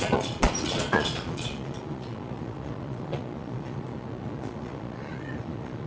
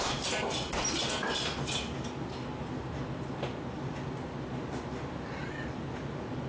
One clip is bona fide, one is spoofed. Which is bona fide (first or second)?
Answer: second